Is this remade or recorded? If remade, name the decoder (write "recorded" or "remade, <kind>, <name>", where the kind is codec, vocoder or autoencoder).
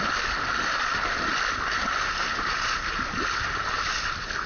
recorded